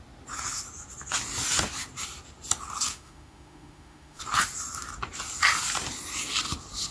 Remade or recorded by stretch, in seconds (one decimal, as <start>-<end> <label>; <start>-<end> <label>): 0.0-2.9 recorded; 2.9-4.2 remade; 4.2-6.9 recorded